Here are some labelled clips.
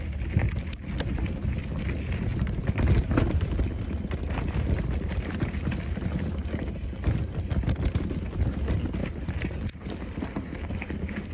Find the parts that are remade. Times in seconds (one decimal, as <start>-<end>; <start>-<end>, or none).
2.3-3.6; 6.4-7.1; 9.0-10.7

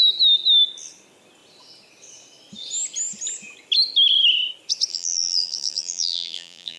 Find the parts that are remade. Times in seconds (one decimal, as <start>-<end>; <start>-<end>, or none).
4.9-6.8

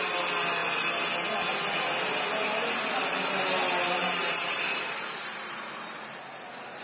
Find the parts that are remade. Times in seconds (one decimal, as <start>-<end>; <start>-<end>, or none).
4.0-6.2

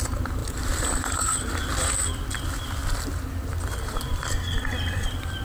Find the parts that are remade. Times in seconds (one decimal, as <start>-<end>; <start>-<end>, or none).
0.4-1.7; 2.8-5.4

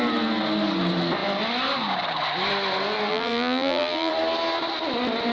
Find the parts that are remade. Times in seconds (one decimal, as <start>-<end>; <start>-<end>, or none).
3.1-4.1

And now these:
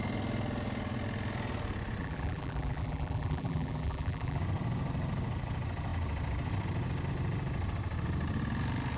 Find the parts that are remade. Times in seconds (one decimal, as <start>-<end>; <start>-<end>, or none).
2.0-4.4

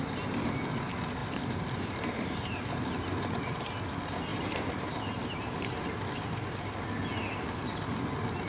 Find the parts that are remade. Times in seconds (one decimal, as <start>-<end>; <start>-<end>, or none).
1.2-2.9; 4.3-5.8